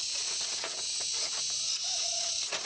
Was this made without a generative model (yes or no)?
no